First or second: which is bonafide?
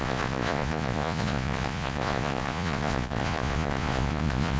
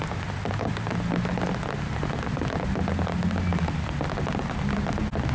second